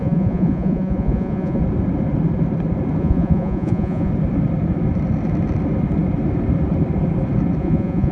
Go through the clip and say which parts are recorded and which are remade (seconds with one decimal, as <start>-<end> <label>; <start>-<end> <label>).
0.0-1.6 remade; 1.6-3.0 recorded; 3.0-4.1 remade; 4.1-7.6 recorded; 7.6-8.1 remade

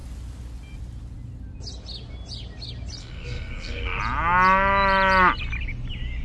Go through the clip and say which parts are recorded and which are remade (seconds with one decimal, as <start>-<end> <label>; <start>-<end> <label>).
0.0-3.0 recorded; 3.0-4.0 remade; 4.0-6.2 recorded

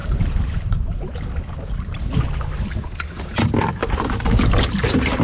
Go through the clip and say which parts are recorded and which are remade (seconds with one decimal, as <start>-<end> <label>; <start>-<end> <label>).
0.0-2.2 remade; 2.2-3.8 recorded; 3.8-4.5 remade; 4.5-5.2 recorded

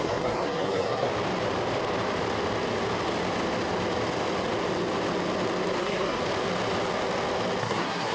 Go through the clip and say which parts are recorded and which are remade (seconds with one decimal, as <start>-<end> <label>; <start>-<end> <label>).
0.0-1.1 remade; 1.1-5.8 recorded; 5.8-6.2 remade; 6.2-7.6 recorded; 7.6-8.1 remade